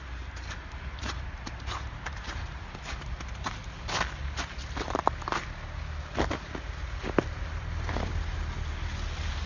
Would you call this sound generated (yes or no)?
no